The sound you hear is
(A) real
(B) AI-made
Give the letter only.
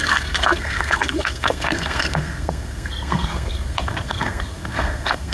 B